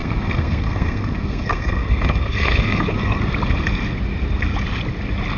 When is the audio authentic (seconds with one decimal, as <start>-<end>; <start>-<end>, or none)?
3.2-5.4